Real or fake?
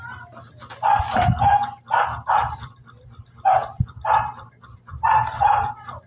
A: real